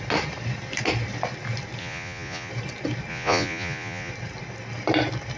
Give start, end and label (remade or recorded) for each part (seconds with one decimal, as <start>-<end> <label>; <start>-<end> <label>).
0.0-1.8 recorded; 1.8-2.5 remade; 2.5-3.1 recorded; 3.1-4.1 remade; 4.1-5.4 recorded